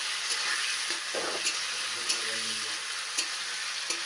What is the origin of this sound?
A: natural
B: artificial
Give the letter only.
A